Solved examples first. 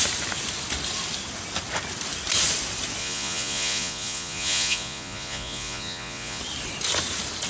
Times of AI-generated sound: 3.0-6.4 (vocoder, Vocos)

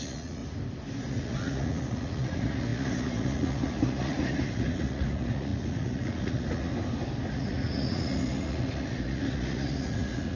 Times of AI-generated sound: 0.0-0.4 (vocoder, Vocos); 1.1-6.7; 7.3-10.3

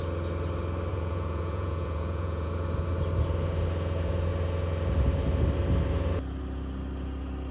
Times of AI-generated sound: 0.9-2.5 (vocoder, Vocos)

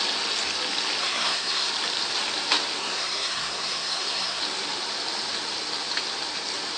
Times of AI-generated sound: 1.0-1.7 (codec, SNAC); 2.8-4.4